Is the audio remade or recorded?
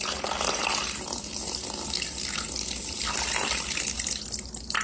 recorded